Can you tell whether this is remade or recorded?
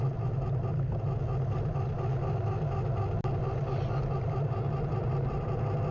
recorded